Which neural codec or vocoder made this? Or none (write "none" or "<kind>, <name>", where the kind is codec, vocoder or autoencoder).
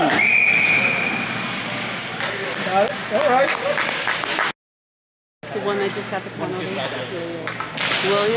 none